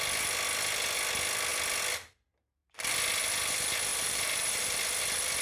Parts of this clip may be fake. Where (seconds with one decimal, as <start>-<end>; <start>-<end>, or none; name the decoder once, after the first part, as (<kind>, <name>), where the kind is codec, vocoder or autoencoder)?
3.9-4.8 (vocoder, BigVGAN v2)